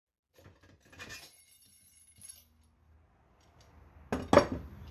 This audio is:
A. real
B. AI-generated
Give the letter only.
A